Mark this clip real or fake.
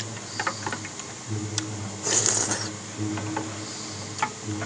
real